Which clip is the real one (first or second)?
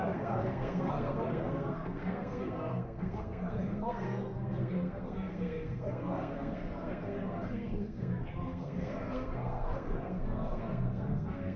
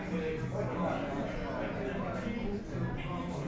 second